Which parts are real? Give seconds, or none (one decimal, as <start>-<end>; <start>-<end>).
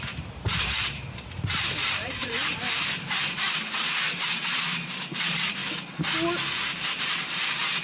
5.6-7.0